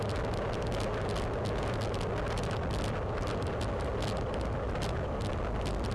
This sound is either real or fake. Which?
real